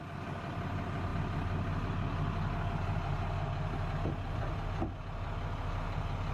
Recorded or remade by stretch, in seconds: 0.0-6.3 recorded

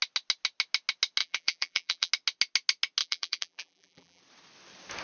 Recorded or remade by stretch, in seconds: 0.0-1.2 recorded; 1.2-2.1 remade; 2.1-3.0 recorded; 3.0-4.2 remade; 4.2-5.0 recorded

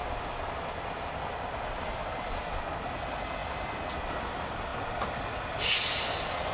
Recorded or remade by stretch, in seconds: 0.0-6.5 recorded

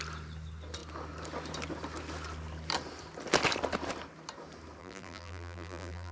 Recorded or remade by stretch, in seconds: 0.0-4.8 recorded; 4.8-6.1 remade